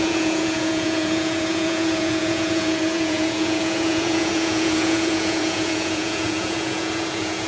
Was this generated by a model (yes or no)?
yes